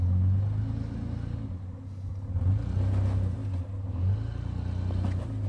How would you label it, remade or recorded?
recorded